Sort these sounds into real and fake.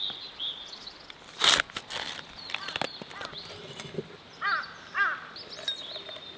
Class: real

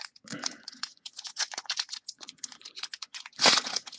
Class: fake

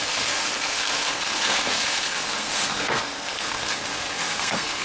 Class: fake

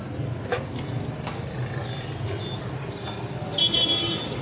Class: real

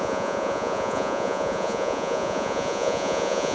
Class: fake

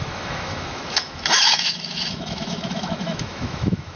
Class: fake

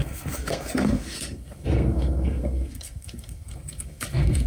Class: fake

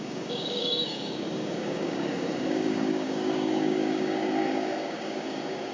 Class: fake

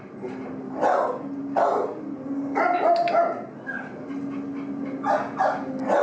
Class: real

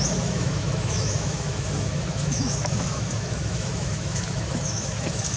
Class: fake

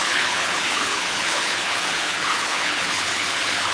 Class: fake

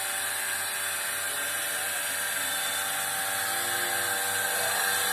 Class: real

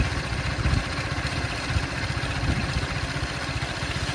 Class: real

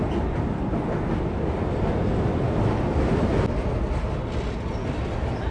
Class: real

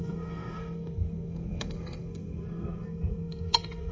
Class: fake